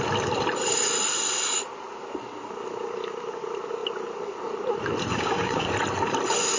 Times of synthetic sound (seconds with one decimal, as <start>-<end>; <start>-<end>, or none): 5.1-5.7